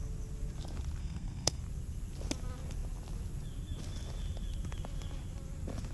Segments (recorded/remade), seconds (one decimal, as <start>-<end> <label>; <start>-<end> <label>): 0.0-1.0 recorded; 1.0-1.6 remade; 1.6-5.9 recorded